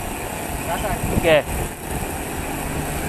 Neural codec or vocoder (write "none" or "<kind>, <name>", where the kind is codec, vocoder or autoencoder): none